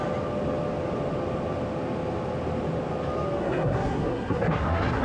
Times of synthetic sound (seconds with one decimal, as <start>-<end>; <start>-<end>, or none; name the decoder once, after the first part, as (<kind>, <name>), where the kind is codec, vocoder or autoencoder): 3.4-5.0 (codec, SNAC)

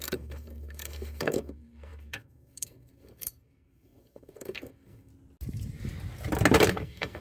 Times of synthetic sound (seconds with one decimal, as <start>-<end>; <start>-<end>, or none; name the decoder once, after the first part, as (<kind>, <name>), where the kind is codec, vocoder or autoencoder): 0.0-5.1 (codec, SNAC); 6.7-7.2

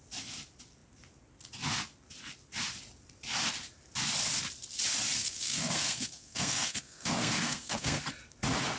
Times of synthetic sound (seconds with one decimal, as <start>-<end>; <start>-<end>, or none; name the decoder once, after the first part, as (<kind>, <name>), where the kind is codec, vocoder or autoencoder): 5.2-8.0 (codec, SNAC)

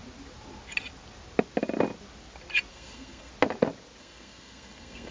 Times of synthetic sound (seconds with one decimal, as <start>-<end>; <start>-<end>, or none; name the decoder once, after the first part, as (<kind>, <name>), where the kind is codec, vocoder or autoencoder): 2.7-3.3 (codec, SNAC); 4.0-5.1

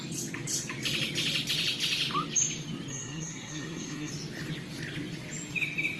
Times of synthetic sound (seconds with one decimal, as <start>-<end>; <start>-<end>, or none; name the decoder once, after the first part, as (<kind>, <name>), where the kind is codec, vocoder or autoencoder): 2.9-4.1 (codec, SNAC)

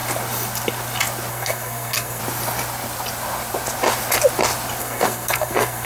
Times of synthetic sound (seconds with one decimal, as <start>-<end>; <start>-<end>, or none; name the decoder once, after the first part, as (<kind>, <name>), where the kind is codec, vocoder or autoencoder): 1.3-2.2 (codec, SNAC); 4.8-5.9

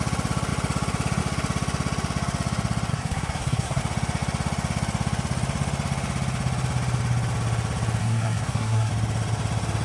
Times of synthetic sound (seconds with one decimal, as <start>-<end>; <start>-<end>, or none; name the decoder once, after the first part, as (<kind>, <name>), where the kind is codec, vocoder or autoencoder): 2.9-3.8 (codec, SNAC); 8.0-8.9